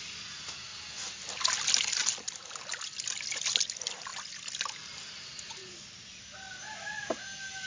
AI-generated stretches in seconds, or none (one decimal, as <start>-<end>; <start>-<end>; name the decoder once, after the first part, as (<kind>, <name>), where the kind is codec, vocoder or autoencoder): 4.1-4.9 (vocoder, BigVGAN v2); 5.6-6.2